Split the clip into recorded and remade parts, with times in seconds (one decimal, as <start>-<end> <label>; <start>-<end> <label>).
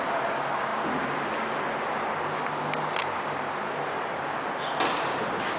0.0-5.6 recorded